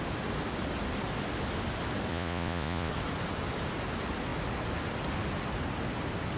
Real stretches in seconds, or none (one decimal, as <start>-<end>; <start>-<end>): 0.0-2.1; 2.9-6.4